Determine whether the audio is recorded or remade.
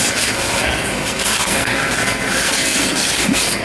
remade